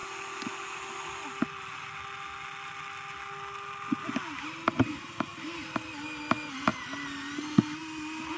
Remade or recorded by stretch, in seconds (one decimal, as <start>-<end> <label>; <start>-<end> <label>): 0.0-8.4 recorded